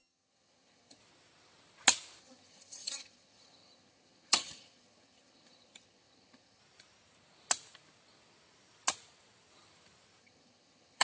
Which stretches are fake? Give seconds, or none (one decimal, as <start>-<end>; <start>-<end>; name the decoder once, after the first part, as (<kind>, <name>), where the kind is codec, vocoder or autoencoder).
0.0-1.0 (vocoder, HiFi-GAN); 2.2-6.6; 10.2-11.0